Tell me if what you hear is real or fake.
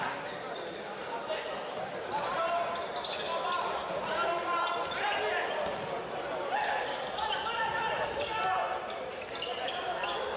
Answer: real